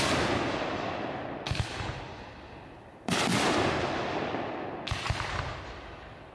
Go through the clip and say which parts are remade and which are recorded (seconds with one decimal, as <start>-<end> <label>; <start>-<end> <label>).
0.0-6.3 recorded